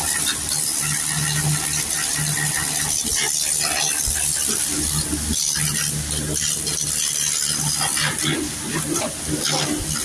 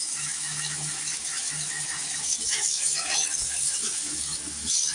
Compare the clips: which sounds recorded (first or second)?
first